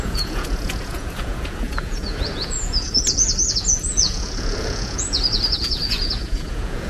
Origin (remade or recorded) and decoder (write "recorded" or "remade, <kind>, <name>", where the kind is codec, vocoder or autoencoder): remade, vocoder, Vocos